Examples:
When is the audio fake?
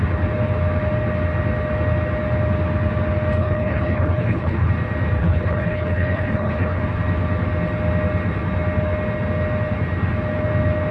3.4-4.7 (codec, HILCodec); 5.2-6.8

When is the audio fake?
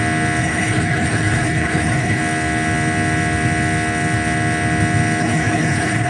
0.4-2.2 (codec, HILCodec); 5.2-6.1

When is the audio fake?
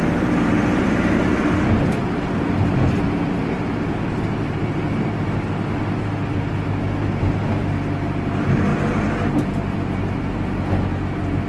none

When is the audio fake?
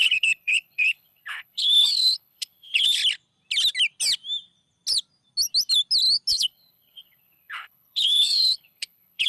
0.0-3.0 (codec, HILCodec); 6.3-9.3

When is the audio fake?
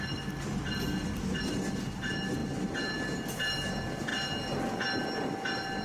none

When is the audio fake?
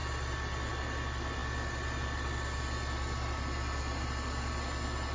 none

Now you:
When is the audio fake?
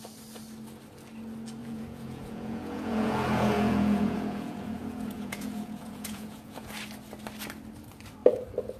1.6-6.7 (vocoder, Vocos)